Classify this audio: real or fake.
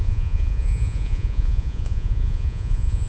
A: fake